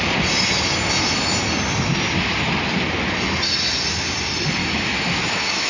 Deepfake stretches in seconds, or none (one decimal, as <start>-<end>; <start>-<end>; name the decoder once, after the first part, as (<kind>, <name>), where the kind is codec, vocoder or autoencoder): 4.6-5.7 (autoencoder, DAC-VAE)